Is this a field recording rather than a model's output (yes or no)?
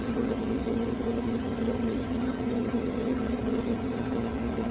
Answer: no